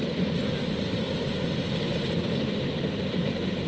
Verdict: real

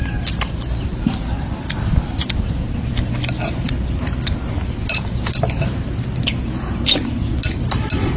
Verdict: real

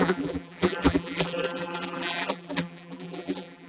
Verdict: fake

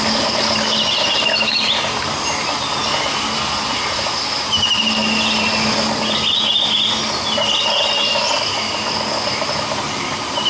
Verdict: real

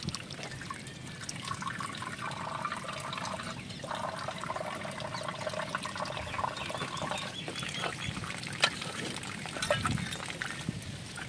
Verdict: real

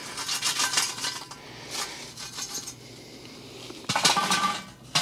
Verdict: real